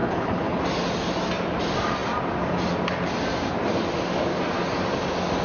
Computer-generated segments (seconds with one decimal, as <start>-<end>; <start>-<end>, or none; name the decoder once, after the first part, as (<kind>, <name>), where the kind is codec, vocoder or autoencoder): 0.0-0.6 (codec, HILCodec)